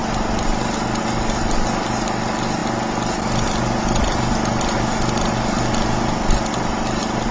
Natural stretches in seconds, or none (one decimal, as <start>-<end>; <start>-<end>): 0.0-7.3

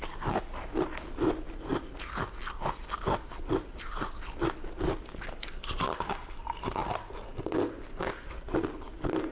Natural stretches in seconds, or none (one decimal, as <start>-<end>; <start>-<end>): 0.0-9.3